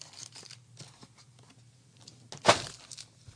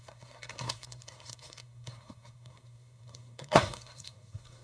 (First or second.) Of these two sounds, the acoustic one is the first